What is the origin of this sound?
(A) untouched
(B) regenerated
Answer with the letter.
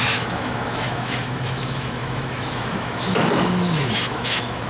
B